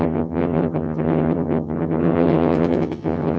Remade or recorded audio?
remade